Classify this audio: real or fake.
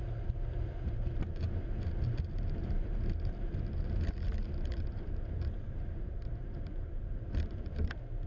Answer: fake